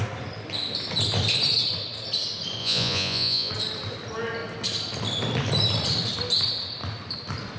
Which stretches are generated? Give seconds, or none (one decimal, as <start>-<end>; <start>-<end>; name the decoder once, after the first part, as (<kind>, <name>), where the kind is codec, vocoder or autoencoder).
2.6-3.5 (vocoder, Vocos)